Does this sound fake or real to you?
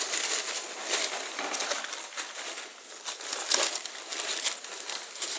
real